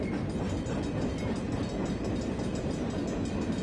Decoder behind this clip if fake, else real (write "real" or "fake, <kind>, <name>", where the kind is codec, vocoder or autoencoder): real